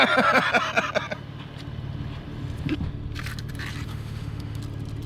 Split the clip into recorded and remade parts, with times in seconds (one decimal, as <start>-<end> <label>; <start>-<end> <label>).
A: 0.0-3.9 recorded; 3.9-4.6 remade; 4.6-5.1 recorded